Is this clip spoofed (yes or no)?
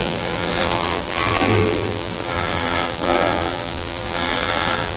yes